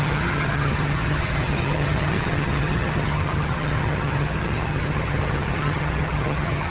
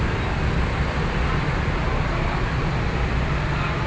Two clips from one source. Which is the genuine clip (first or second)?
second